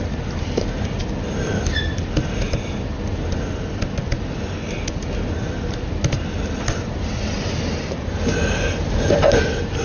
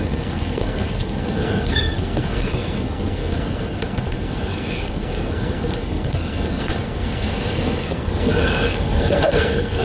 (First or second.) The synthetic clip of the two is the second